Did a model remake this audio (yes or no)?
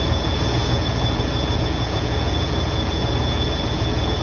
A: yes